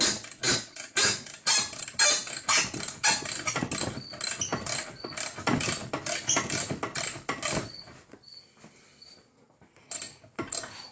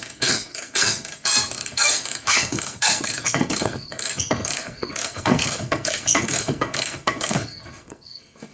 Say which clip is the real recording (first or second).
first